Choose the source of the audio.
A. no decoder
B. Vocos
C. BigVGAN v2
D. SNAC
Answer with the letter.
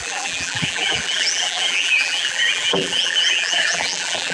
C